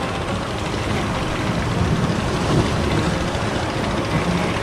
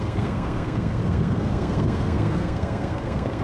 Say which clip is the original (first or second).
first